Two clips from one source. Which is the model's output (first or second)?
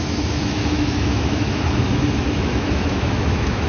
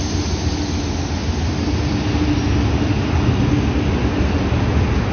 first